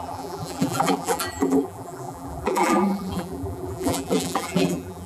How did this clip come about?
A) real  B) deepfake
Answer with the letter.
B